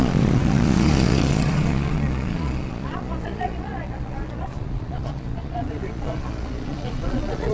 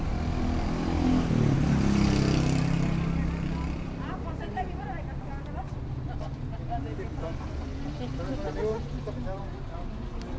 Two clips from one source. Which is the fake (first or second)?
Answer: first